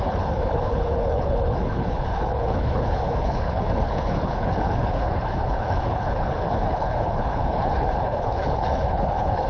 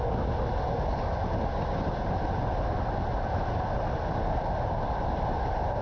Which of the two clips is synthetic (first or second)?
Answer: first